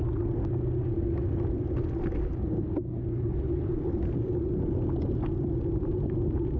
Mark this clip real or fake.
real